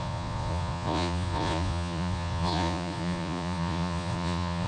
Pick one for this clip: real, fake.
fake